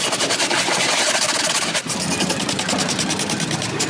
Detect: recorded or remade recorded